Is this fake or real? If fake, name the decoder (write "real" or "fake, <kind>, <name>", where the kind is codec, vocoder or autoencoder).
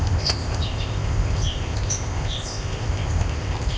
fake, codec, ZipCodec